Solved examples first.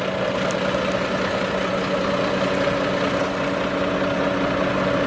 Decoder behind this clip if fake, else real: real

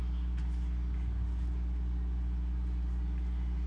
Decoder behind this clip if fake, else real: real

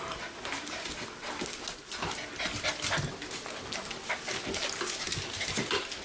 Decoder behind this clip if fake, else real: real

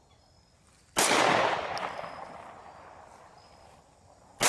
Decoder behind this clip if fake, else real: real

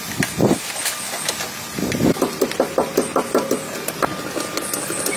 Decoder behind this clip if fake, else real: real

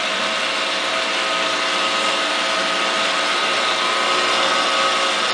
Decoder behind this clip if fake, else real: real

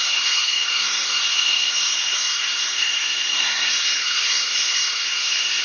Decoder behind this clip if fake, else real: fake, codec, SNAC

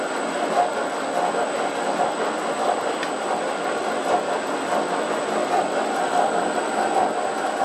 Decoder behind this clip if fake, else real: real